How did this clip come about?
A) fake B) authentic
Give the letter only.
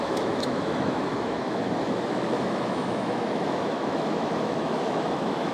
A